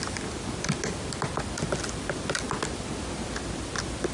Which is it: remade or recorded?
recorded